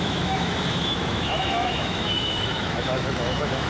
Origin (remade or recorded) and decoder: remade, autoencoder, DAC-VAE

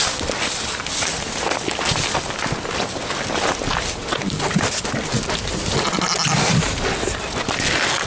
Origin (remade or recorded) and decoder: recorded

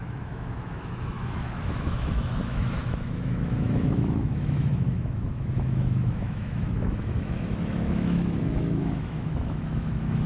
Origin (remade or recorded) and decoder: remade, autoencoder, DAC-VAE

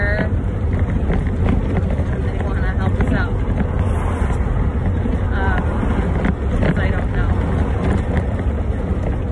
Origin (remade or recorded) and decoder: recorded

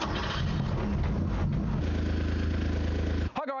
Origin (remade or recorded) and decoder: recorded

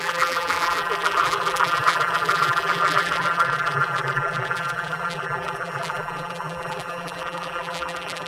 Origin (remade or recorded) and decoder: remade, vocoder, BigVGAN v2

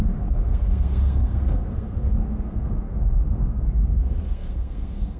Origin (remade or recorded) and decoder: remade, codec, SNAC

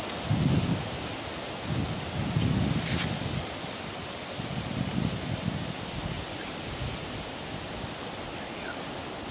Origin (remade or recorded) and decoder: recorded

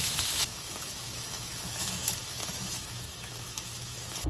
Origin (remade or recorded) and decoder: remade, autoencoder, DAC-VAE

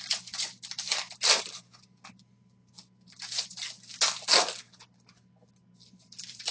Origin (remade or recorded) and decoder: recorded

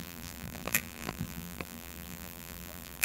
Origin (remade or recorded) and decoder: remade, vocoder, BigVGAN v2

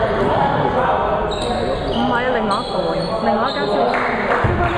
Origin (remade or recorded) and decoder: recorded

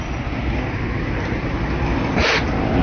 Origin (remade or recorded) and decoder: recorded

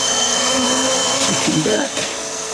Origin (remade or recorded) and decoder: remade, codec, SNAC